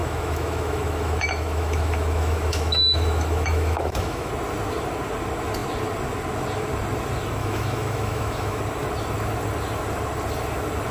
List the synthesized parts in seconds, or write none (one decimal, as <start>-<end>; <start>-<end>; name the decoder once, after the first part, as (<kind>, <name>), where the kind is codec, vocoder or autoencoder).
0.0-4.3 (autoencoder, DAC-VAE); 7.4-8.6